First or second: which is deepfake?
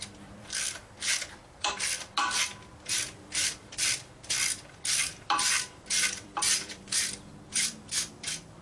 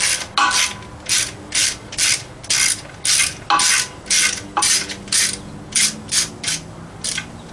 first